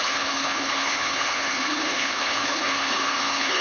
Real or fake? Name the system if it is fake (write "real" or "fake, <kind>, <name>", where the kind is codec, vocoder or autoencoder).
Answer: fake, codec, HILCodec